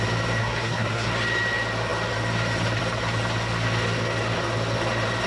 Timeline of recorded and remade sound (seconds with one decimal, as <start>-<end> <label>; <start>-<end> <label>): 0.0-0.4 recorded; 0.4-1.1 remade; 1.1-5.3 recorded